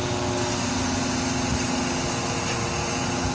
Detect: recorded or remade recorded